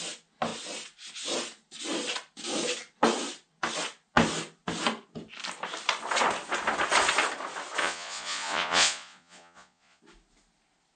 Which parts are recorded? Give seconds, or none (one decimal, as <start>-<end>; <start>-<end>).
0.0-7.8; 10.0-11.0